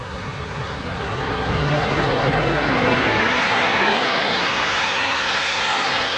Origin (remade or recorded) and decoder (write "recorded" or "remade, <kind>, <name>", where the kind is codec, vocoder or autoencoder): remade, codec, SNAC